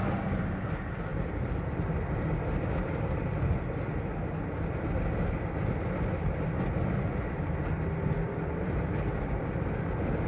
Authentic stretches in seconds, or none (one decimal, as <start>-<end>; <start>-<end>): 0.0-1.1; 1.8-7.1; 9.4-10.3